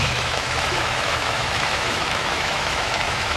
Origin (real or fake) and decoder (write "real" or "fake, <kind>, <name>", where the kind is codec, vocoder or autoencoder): fake, autoencoder, DAC-VAE